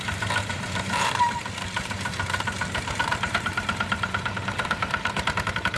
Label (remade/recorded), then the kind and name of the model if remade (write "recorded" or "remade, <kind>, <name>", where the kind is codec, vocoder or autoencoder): remade, vocoder, BigVGAN v2